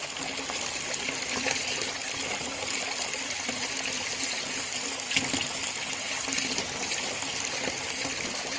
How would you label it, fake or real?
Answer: real